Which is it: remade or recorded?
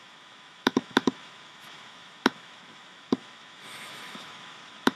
remade